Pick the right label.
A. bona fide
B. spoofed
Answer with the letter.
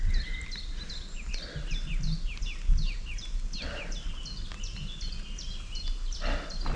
A